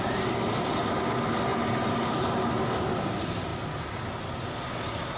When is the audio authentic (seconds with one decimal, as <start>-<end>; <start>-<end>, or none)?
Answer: 0.0-5.2